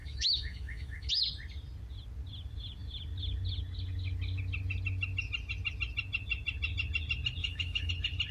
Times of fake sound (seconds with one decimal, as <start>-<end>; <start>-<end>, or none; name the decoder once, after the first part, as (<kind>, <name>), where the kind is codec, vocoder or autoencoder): 0.0-1.1 (autoencoder, DAC-VAE); 7.4-7.9